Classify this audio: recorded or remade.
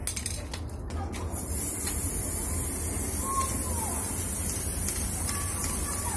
recorded